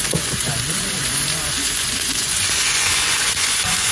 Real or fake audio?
fake